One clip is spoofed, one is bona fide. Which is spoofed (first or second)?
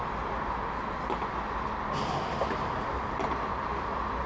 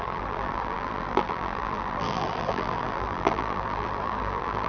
second